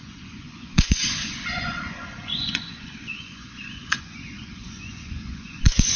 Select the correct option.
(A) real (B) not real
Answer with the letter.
B